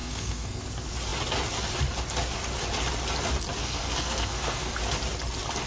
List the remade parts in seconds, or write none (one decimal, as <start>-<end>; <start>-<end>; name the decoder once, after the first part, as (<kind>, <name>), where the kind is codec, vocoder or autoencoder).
0.0-0.6 (codec, SNAC); 3.6-4.7